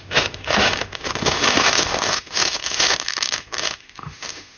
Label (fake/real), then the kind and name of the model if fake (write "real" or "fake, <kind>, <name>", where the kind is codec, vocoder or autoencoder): fake, autoencoder, DAC-VAE